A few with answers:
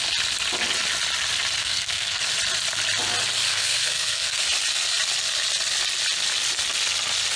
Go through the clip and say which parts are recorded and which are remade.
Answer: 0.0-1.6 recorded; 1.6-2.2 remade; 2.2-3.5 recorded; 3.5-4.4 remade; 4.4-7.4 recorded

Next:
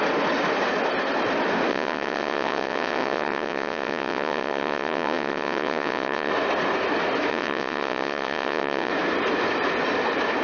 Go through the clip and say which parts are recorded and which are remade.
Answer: 0.0-1.7 recorded; 1.7-6.3 remade; 6.3-7.3 recorded; 7.3-8.9 remade; 8.9-10.4 recorded

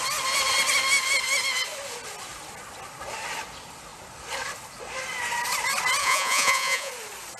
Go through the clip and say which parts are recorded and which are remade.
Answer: 0.0-6.0 recorded; 6.0-6.9 remade; 6.9-7.4 recorded